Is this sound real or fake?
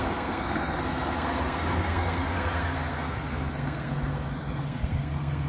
fake